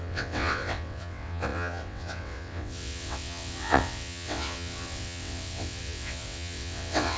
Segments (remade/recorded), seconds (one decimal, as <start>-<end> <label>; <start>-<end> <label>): 0.0-7.2 remade

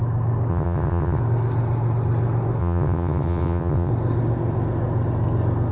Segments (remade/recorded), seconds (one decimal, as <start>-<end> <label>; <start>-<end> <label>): 0.0-0.5 recorded; 0.5-1.2 remade; 1.2-2.6 recorded; 2.6-3.9 remade; 3.9-5.7 recorded

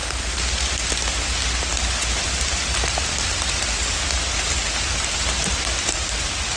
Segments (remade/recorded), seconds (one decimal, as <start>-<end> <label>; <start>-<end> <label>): 0.0-6.6 recorded

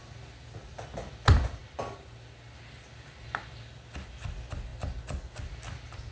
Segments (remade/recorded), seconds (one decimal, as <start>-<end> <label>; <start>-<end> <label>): 0.0-6.1 recorded

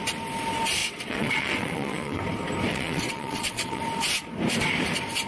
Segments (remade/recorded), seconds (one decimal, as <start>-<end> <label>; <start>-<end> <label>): 0.0-0.8 recorded; 0.8-2.2 remade; 2.2-2.7 recorded; 2.7-3.8 remade; 3.8-5.3 recorded

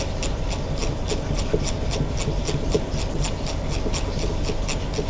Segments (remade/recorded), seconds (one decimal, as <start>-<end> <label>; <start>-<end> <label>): 0.0-5.1 recorded